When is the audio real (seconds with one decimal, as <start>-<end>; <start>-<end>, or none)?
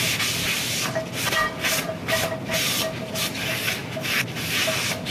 0.0-5.1